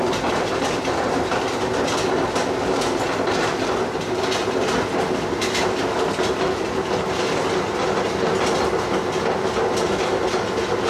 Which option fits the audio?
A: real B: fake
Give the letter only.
A